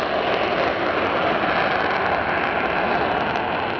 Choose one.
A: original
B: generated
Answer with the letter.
A